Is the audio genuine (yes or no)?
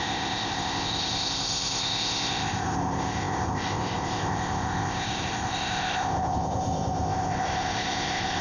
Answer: no